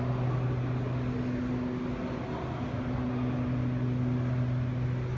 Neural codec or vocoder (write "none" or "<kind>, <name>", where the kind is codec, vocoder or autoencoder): none